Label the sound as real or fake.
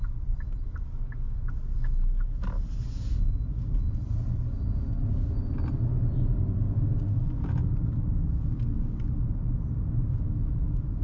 real